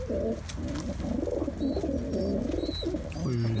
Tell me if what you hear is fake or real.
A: real